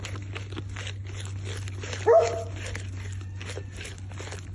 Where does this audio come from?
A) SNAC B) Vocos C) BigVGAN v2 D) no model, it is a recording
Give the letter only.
D